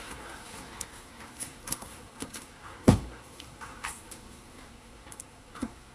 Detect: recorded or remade remade